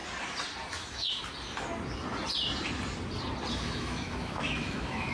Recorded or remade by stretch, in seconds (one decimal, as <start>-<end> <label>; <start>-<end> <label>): 0.0-0.7 recorded; 0.7-1.2 remade; 1.2-3.5 recorded; 3.5-5.1 remade